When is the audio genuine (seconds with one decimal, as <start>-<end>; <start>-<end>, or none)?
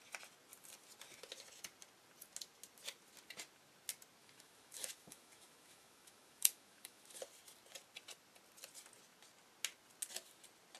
0.0-4.2; 7.2-10.8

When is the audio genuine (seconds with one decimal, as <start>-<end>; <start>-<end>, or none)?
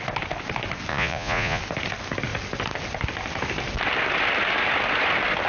0.0-0.9; 1.6-5.5